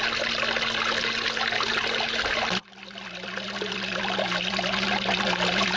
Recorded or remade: recorded